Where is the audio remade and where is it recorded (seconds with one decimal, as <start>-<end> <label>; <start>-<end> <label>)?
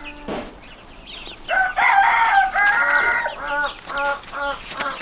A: 0.0-4.1 recorded; 4.1-5.0 remade